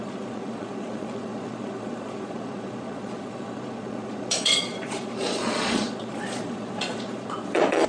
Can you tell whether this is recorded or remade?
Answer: remade